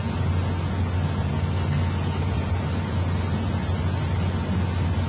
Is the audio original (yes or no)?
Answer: yes